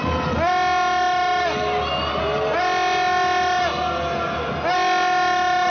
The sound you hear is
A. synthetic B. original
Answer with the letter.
B